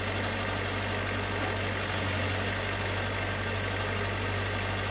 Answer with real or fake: real